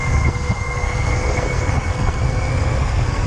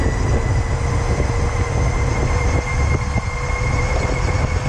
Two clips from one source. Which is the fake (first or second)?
first